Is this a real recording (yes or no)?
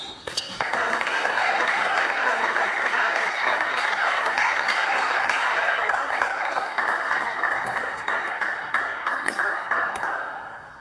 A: no